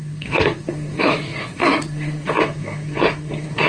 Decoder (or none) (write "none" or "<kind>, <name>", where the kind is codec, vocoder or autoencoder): codec, SNAC